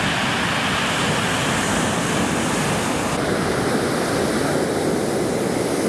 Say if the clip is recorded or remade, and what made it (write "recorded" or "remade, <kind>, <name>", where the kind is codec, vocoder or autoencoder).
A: recorded